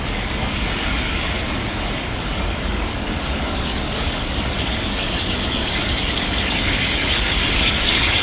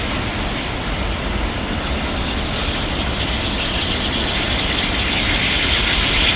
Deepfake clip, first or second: first